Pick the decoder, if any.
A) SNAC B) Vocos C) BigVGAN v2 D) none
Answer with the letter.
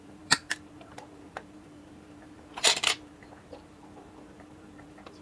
C